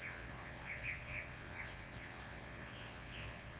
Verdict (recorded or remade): remade